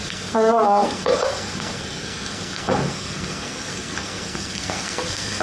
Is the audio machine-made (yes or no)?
yes